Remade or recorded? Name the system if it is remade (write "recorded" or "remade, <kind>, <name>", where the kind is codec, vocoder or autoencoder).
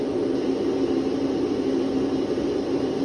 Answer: recorded